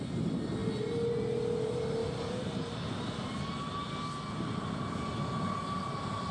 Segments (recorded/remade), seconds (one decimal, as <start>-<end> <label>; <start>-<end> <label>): 0.0-6.3 recorded